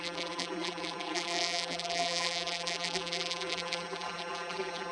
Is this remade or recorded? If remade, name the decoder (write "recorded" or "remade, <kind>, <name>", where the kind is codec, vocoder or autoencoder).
remade, vocoder, BigVGAN v2